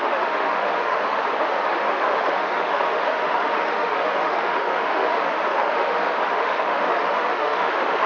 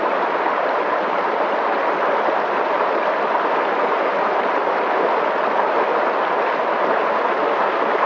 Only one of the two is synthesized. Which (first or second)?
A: first